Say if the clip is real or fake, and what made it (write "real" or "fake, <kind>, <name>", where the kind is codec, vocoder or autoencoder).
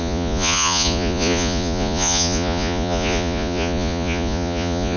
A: fake, vocoder, Vocos